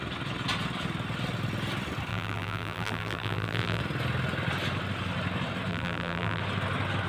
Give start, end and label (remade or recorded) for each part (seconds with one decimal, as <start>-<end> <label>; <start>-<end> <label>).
0.0-2.1 recorded; 2.1-3.8 remade; 3.8-5.7 recorded; 5.7-6.4 remade; 6.4-7.1 recorded